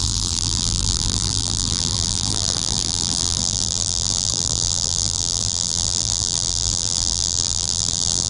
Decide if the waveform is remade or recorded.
remade